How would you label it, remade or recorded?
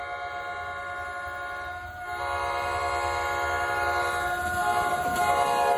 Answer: recorded